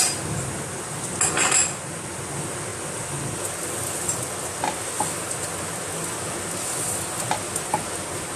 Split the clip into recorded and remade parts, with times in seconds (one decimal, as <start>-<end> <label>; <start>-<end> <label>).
0.0-8.4 recorded